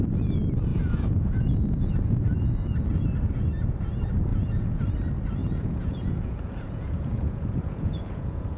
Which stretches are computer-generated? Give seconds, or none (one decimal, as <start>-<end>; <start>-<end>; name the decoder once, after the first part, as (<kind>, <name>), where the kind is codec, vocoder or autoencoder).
0.7-2.5 (vocoder, Vocos); 4.3-4.8; 5.4-8.6